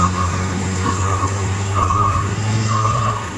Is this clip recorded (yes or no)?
no